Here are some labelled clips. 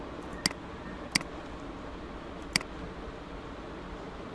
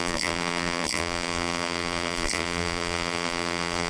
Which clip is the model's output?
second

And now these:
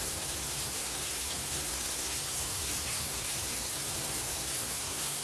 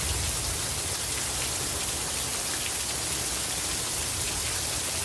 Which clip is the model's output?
first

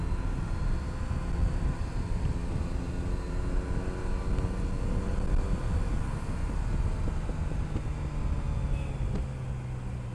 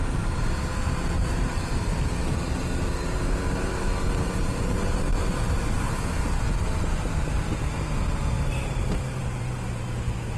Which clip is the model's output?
second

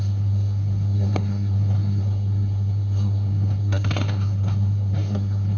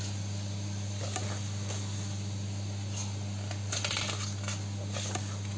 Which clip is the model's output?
first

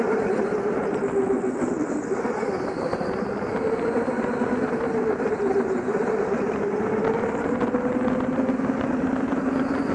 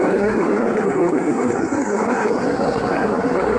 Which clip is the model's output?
second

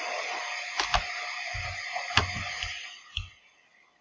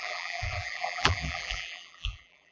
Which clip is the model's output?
second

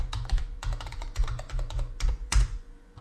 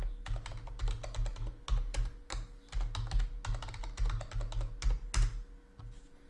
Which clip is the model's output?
first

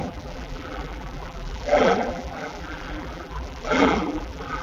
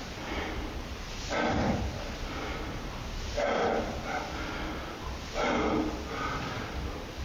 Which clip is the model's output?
first